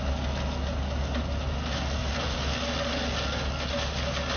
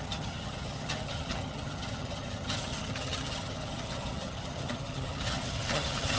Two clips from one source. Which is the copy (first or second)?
second